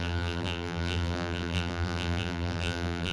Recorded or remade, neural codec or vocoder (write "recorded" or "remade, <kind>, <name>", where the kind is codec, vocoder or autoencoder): remade, vocoder, BigVGAN v2